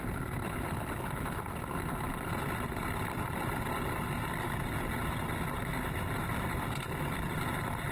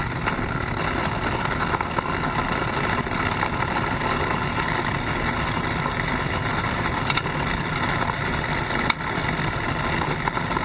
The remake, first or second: first